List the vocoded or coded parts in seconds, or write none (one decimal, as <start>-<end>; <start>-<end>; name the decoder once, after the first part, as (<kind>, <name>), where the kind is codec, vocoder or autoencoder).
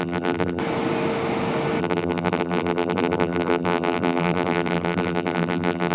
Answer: 0.0-0.6 (vocoder, BigVGAN v2); 1.8-5.9